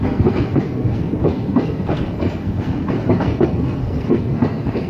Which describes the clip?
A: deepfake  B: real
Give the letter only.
A